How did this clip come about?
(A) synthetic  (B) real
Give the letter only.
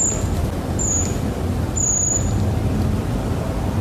B